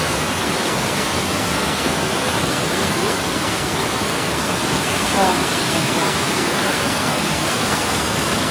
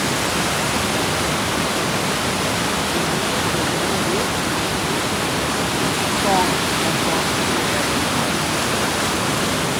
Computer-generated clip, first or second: first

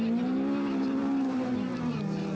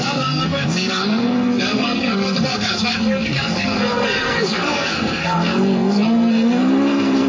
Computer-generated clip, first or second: second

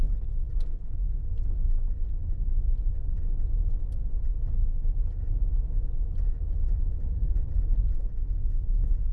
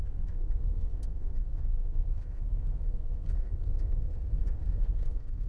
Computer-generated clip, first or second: second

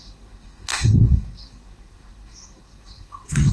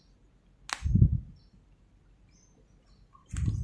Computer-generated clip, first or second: first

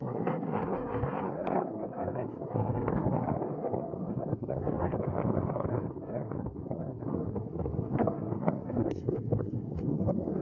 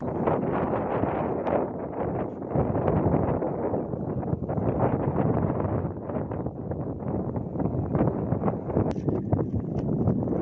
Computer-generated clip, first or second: first